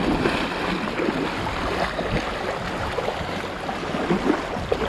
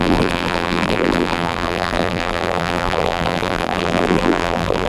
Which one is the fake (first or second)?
second